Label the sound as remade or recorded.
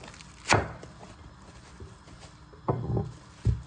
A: recorded